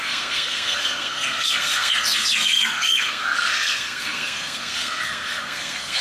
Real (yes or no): no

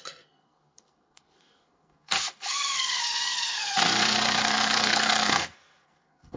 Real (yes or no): no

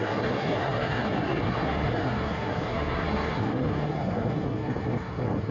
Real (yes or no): no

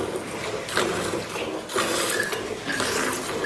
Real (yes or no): yes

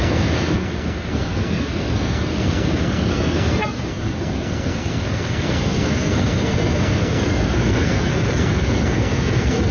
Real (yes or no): no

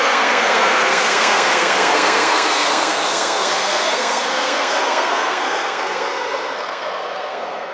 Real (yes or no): no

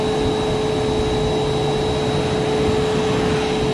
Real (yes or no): yes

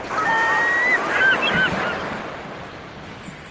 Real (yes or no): yes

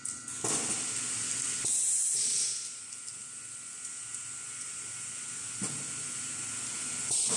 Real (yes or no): yes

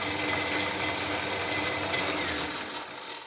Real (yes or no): yes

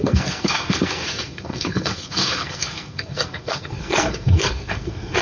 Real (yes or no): no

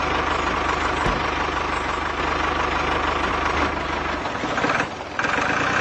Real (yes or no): yes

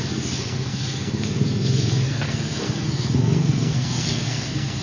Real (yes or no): no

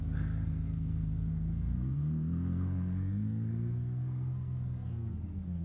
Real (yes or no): no